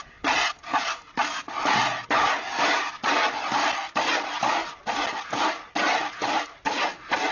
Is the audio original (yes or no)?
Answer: yes